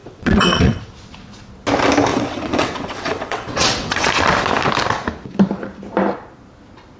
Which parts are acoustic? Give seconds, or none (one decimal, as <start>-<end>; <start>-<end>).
0.8-2.1; 4.1-7.0